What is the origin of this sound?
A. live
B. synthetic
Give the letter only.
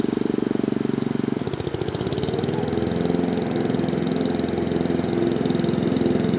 A